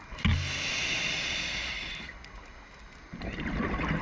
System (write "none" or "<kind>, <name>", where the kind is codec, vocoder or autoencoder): none